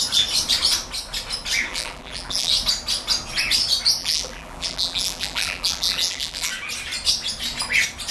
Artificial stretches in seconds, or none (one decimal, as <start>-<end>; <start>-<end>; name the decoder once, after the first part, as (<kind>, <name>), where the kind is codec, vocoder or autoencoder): 1.7-2.5 (vocoder, BigVGAN v2); 4.0-6.5